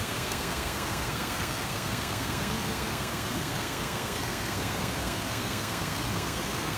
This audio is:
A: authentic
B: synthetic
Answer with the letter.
B